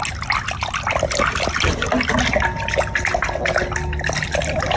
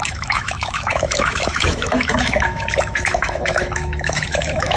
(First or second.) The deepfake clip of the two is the second